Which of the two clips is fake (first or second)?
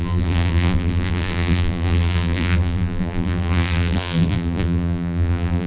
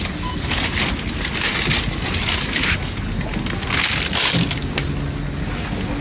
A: first